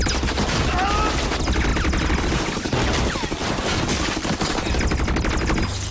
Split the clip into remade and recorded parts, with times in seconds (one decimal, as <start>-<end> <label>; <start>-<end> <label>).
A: 0.0-5.9 recorded